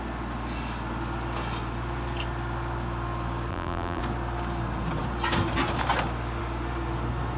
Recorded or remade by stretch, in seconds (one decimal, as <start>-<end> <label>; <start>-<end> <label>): 0.0-3.5 recorded; 3.5-4.0 remade; 4.0-7.4 recorded